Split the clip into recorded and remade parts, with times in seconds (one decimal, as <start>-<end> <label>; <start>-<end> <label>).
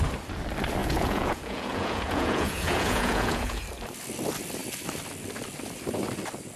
0.0-0.8 recorded; 0.8-3.6 remade; 3.6-6.6 recorded